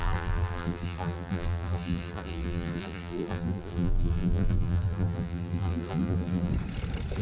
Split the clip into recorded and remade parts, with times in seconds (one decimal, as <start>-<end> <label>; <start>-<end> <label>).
0.0-6.5 remade; 6.5-7.2 recorded